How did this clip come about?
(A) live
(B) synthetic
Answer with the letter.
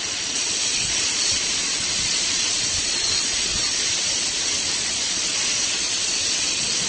B